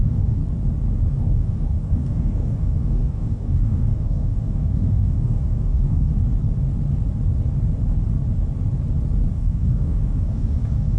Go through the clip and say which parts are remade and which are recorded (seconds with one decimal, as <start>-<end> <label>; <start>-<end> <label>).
0.0-0.4 remade; 0.4-1.1 recorded; 1.1-6.1 remade; 6.1-9.3 recorded; 9.3-11.0 remade

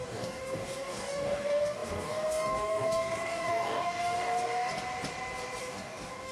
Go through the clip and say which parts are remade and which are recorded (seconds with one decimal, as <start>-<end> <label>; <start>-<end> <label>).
0.0-4.7 remade; 4.7-5.6 recorded; 5.6-6.3 remade

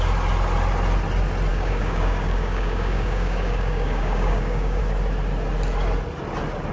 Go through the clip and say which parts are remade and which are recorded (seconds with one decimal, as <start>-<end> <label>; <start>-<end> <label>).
0.0-1.5 recorded; 1.5-4.8 remade; 4.8-6.7 recorded

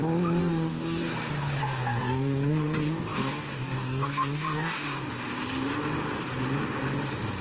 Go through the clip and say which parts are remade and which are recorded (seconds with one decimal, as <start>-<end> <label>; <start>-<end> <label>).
0.0-0.4 recorded; 0.4-1.0 remade; 1.0-1.6 recorded; 1.6-5.1 remade; 5.1-7.4 recorded